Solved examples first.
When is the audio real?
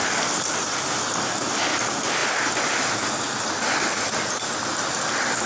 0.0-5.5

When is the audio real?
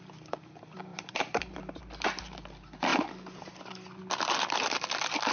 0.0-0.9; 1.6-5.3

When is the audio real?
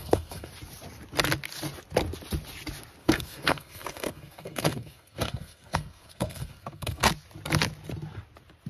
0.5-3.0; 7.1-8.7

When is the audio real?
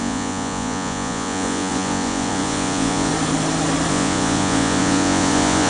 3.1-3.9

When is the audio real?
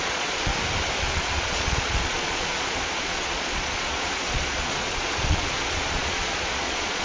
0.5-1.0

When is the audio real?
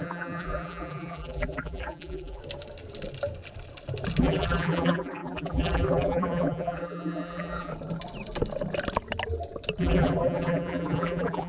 2.4-4.2; 7.7-9.8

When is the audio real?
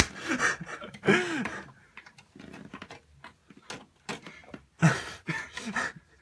0.0-6.2